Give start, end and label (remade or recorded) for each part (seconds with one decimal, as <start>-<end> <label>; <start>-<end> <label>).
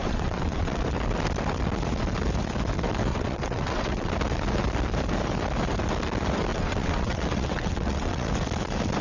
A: 0.0-0.8 remade; 0.8-3.1 recorded; 3.1-4.1 remade; 4.1-6.5 recorded; 6.5-8.3 remade; 8.3-9.0 recorded